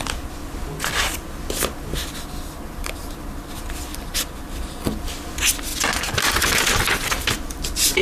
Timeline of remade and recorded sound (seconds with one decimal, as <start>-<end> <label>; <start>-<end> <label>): 0.0-8.0 recorded